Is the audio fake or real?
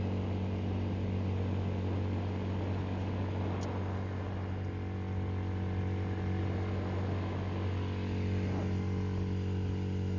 real